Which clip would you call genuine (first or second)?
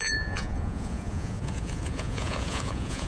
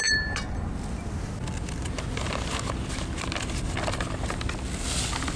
second